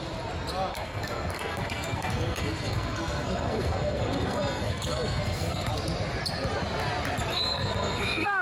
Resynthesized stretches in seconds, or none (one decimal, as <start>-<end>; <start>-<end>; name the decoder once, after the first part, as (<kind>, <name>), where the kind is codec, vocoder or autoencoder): 0.7-5.7 (codec, SNAC); 7.3-8.4